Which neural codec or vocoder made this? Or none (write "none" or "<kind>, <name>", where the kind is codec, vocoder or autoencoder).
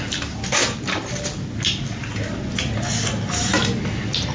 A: none